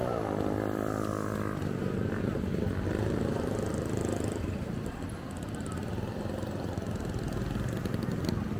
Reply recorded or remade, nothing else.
recorded